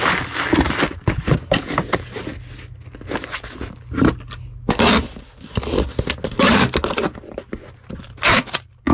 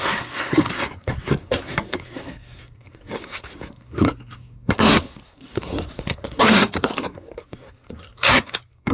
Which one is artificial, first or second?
second